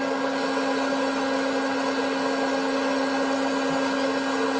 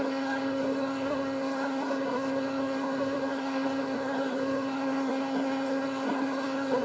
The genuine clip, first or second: first